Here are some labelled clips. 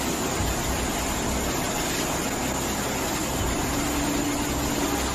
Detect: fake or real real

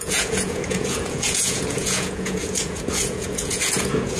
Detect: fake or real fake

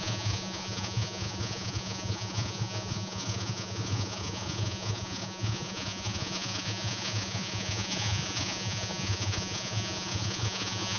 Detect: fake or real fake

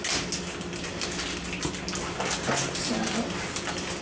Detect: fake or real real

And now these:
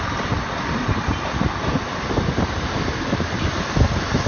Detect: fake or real real